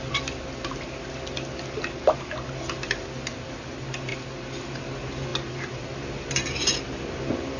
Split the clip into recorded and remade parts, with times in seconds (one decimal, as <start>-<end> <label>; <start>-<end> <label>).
0.0-7.6 recorded